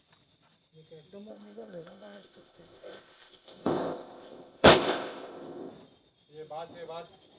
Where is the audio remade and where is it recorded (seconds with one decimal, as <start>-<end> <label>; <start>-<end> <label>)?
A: 0.0-1.3 recorded; 1.3-5.7 remade; 5.7-7.4 recorded